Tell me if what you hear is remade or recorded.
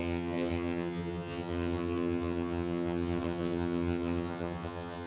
remade